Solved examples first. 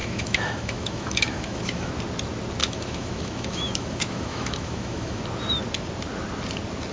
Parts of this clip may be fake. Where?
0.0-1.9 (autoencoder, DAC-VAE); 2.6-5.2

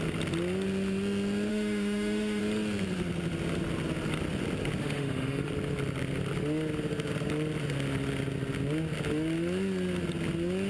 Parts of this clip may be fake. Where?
1.5-2.4 (autoencoder, DAC-VAE); 4.8-5.5